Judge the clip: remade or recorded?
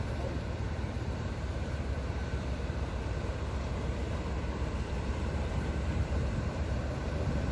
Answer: remade